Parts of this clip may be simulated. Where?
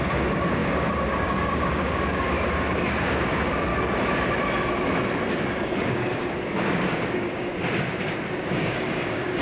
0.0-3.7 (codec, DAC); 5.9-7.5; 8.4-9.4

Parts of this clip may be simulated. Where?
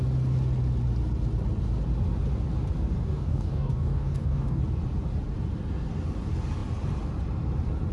3.0-4.6 (codec, DAC)